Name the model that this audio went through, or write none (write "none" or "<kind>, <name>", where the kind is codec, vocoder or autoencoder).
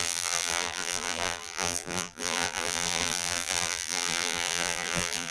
vocoder, BigVGAN v2